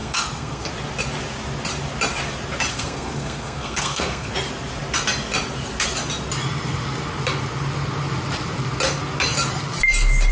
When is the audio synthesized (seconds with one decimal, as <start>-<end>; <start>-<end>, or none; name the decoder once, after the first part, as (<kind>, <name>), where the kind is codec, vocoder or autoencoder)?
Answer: 0.0-0.7 (codec, SNAC); 2.7-4.3

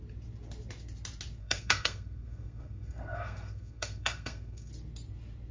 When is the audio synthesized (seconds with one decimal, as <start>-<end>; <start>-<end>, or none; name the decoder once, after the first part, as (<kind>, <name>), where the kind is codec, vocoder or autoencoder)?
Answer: 1.4-4.7 (codec, SNAC)

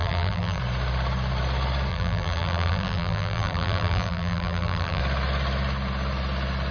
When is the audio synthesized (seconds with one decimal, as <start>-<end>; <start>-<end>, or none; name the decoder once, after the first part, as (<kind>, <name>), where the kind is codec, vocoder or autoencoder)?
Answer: 0.0-0.6 (vocoder, BigVGAN v2); 1.9-5.0

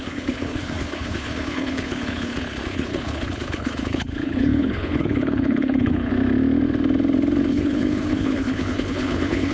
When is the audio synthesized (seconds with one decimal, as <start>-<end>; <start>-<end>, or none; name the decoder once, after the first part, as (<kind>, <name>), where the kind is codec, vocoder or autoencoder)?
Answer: 0.0-6.1 (codec, HILCodec); 7.5-9.5